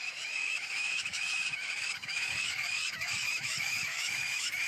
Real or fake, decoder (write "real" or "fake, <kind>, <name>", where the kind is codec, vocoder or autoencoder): fake, autoencoder, DAC-VAE